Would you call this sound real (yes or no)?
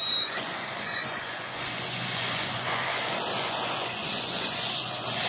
no